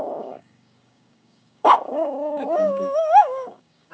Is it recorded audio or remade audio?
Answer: remade